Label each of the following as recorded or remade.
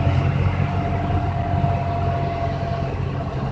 recorded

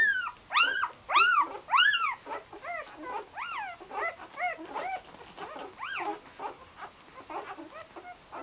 recorded